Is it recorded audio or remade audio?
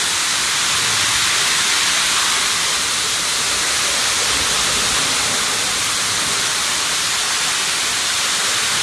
recorded